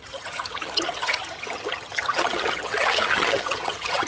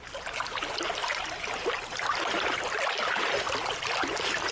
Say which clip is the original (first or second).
second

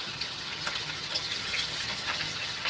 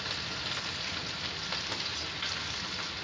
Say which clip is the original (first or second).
second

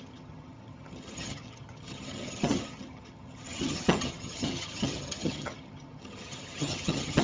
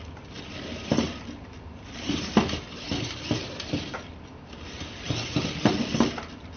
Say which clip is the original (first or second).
second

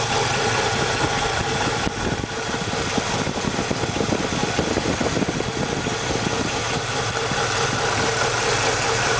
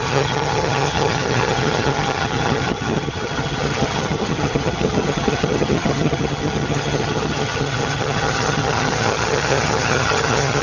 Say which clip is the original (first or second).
first